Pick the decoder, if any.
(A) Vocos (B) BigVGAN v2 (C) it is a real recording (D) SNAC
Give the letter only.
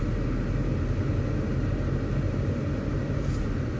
C